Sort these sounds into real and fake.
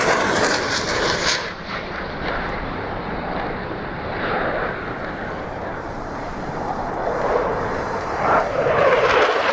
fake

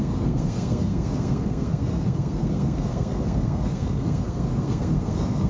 fake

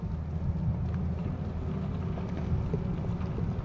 real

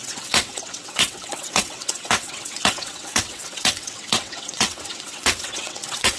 fake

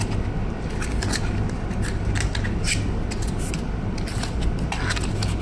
real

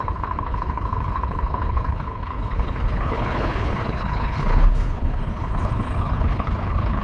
fake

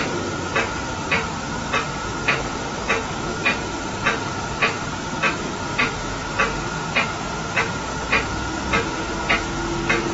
real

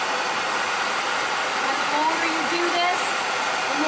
real